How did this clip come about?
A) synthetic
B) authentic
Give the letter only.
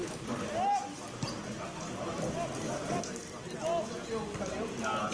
B